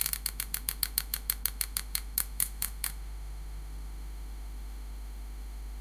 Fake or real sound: fake